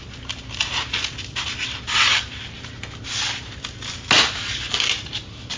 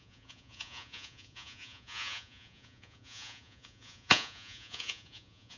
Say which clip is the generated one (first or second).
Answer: second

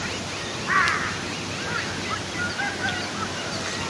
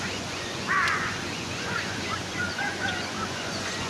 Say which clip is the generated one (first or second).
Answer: second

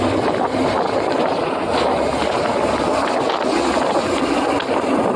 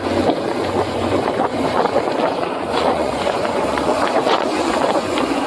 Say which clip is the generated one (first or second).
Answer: second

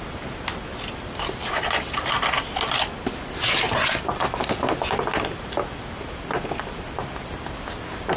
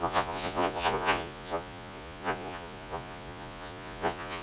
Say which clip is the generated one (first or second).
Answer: second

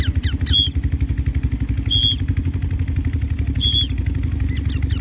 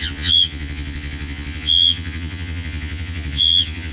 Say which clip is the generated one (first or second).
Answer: second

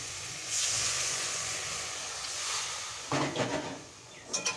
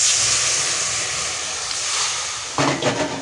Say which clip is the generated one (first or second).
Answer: first